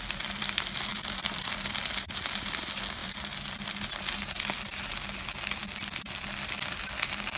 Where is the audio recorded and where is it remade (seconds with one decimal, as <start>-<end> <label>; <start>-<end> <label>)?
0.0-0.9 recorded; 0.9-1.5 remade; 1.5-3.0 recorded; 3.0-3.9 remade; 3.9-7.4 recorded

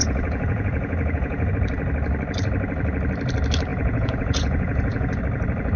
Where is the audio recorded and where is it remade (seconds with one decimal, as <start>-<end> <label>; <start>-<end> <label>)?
0.0-1.5 remade; 1.5-3.7 recorded; 3.7-5.2 remade; 5.2-5.8 recorded

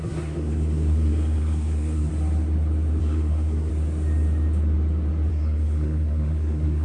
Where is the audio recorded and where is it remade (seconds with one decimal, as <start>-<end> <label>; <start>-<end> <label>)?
0.0-2.1 remade; 2.1-3.0 recorded; 3.0-3.7 remade; 3.7-5.3 recorded; 5.3-6.8 remade

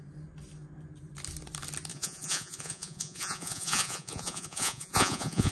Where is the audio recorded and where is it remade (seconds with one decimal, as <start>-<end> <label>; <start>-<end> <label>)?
0.0-1.9 recorded; 1.9-5.5 remade